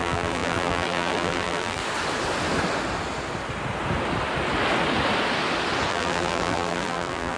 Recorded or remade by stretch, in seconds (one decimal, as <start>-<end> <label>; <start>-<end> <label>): 0.0-1.8 remade; 1.8-5.9 recorded; 5.9-7.4 remade